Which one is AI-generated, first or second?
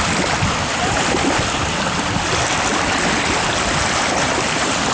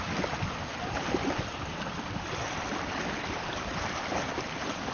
second